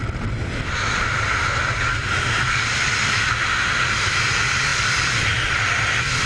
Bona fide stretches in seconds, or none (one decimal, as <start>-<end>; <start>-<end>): 0.0-4.7